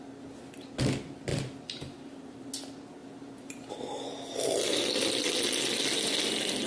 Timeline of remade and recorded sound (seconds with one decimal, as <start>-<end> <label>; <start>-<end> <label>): 0.0-1.3 recorded; 1.3-2.5 remade; 2.5-3.0 recorded; 3.0-3.7 remade; 3.7-6.7 recorded